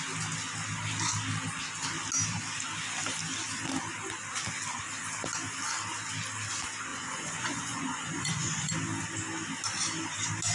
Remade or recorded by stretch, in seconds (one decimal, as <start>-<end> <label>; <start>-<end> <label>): 0.0-6.9 recorded; 6.9-8.7 remade; 8.7-10.5 recorded